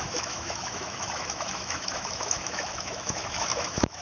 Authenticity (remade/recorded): remade